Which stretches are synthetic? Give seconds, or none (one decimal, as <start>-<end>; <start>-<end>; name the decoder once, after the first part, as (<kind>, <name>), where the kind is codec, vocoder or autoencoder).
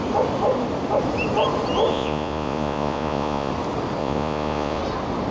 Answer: 1.9-3.5 (vocoder, Vocos); 4.0-4.8